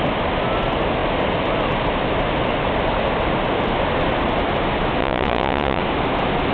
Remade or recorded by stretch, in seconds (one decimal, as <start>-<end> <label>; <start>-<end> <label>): 0.0-5.0 recorded; 5.0-5.8 remade; 5.8-6.5 recorded